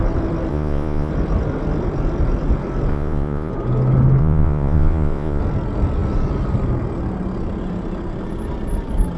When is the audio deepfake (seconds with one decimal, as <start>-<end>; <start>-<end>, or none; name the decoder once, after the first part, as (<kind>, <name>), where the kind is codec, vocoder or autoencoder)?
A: 0.5-1.1 (vocoder, Vocos); 2.9-3.5; 4.2-5.4